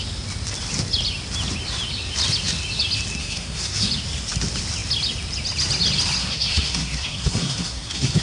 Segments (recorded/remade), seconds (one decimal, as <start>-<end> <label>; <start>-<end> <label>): 0.0-3.2 recorded; 3.2-3.9 remade; 3.9-6.2 recorded; 6.2-8.2 remade